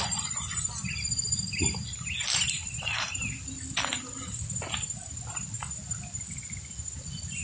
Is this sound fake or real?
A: real